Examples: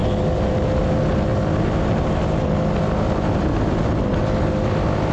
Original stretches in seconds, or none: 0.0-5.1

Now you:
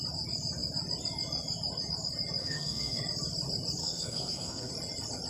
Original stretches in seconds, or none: 0.0-2.4; 3.0-3.8; 4.7-5.3

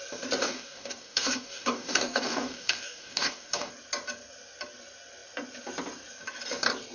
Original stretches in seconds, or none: 0.0-0.4; 3.7-6.9

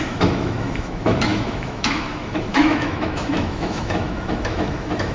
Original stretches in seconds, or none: none

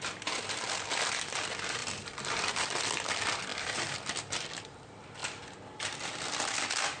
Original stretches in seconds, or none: 3.5-4.8; 5.2-7.0

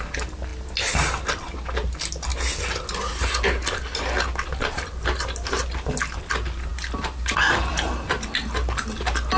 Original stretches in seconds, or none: 0.0-9.4

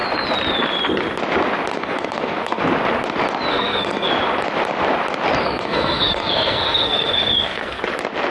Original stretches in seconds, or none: 0.0-1.7; 2.6-3.5; 4.1-5.4; 7.8-8.3